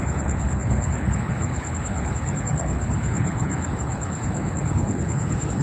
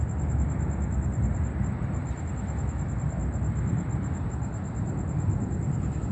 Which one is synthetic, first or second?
first